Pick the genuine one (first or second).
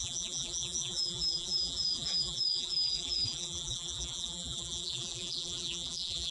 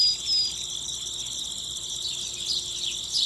second